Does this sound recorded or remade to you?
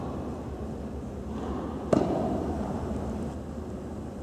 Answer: recorded